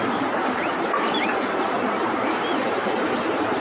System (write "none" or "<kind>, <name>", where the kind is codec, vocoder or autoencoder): vocoder, BigVGAN v2